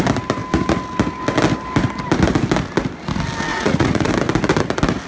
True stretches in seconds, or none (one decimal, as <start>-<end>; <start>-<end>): 0.0-3.5; 4.1-5.1